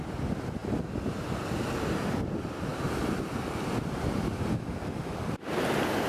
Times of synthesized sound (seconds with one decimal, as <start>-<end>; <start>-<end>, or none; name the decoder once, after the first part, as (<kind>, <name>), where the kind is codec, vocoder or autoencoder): none